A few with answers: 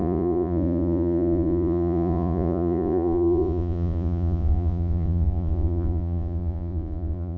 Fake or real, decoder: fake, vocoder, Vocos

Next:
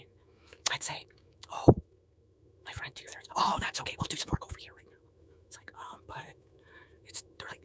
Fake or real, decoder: fake, autoencoder, DAC-VAE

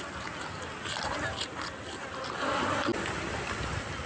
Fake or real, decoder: real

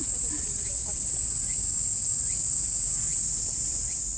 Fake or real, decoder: real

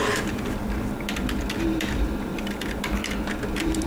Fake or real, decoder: fake, vocoder, BigVGAN v2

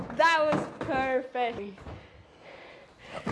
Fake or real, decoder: real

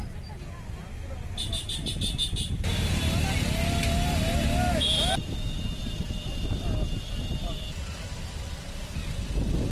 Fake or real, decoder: real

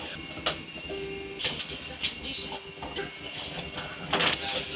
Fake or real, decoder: real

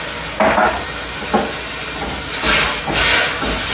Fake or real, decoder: real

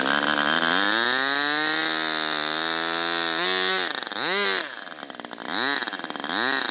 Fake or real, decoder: real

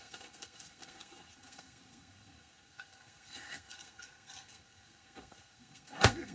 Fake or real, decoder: fake, codec, SNAC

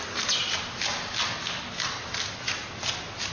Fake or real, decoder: real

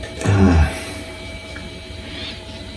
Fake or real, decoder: fake, vocoder, BigVGAN v2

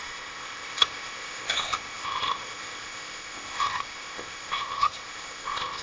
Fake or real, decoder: fake, codec, ZipCodec